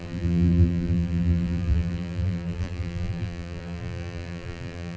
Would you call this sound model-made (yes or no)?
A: yes